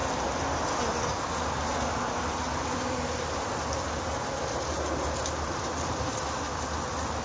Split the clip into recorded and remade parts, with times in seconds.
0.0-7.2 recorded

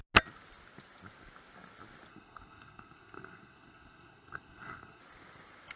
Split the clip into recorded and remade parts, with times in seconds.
0.0-2.1 recorded; 2.1-5.0 remade; 5.0-5.8 recorded

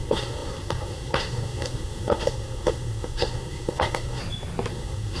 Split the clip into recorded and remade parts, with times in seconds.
0.0-4.2 remade; 4.2-4.7 recorded; 4.7-5.2 remade

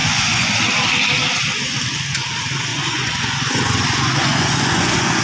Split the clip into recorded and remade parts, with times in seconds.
0.0-0.5 remade; 0.5-2.7 recorded; 2.7-5.2 remade